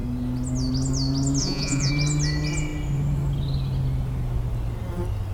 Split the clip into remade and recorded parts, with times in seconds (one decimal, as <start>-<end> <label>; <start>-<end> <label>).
0.0-1.4 recorded; 1.4-1.9 remade; 1.9-5.3 recorded